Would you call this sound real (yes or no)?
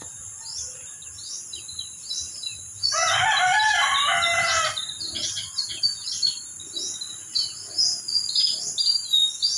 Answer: yes